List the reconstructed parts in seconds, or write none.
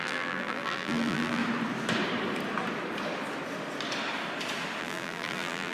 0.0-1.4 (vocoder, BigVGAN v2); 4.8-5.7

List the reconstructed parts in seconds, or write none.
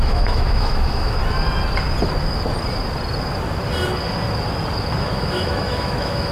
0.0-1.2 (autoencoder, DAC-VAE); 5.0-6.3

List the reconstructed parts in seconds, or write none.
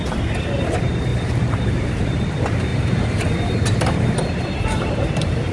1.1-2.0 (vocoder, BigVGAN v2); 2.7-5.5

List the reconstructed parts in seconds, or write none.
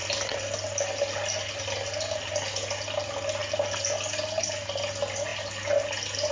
none